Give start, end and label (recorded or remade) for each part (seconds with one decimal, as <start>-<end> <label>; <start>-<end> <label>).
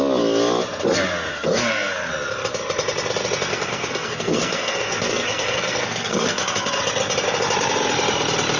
0.0-1.3 recorded; 1.3-2.1 remade; 2.1-3.5 recorded; 3.5-6.8 remade; 6.8-8.6 recorded